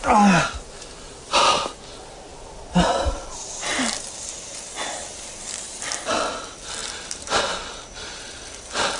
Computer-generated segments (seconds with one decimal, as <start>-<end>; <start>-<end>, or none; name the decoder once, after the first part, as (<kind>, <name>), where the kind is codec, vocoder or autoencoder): 6.8-7.4 (vocoder, BigVGAN v2)